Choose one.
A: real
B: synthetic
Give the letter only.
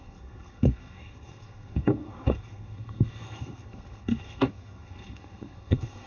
B